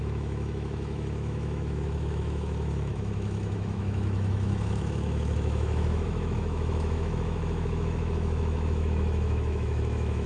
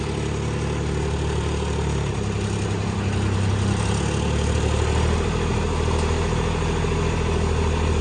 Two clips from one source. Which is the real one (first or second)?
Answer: second